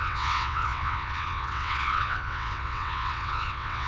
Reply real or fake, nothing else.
fake